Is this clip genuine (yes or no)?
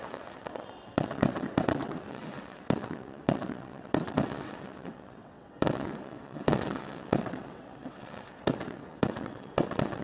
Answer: no